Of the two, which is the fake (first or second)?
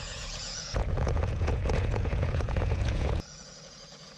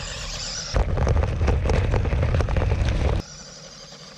first